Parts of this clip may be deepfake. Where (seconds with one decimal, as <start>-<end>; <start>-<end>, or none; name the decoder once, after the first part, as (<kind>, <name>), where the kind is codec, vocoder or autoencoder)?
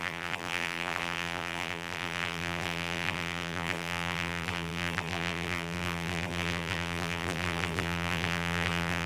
0.0-9.1 (vocoder, BigVGAN v2)